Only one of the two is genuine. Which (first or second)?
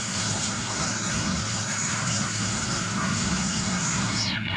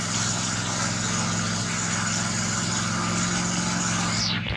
second